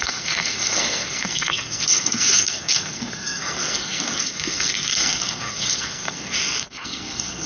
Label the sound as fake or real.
fake